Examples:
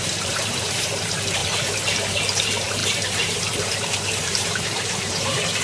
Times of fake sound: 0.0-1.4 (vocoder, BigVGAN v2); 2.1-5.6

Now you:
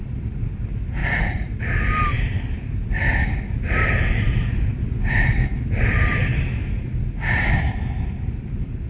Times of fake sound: 1.0-1.6 (vocoder, Vocos); 6.6-7.5

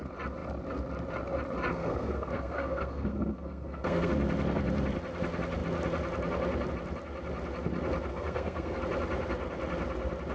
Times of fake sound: 1.7-4.1 (codec, SNAC); 8.1-8.8

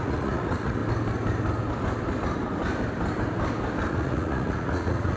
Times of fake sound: 0.0-0.8 (vocoder, Vocos); 3.9-5.2

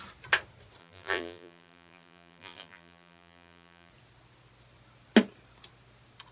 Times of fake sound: 0.8-3.9 (vocoder, BigVGAN v2)

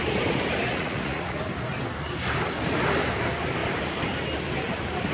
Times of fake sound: 0.7-1.4 (vocoder, Vocos)

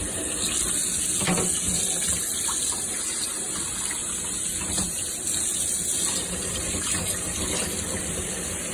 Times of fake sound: none

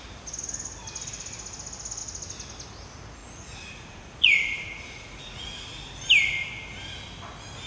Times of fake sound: 3.2-5.9 (vocoder, Vocos)